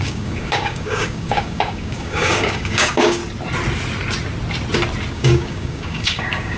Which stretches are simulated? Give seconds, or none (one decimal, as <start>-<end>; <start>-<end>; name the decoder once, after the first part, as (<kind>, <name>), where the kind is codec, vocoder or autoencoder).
0.0-3.2 (codec, DAC); 5.1-6.6